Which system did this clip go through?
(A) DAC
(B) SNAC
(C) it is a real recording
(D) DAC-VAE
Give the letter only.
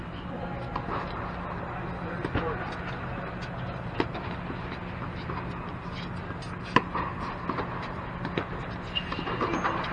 C